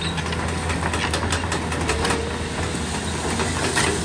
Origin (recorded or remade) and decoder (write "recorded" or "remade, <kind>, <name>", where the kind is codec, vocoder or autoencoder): recorded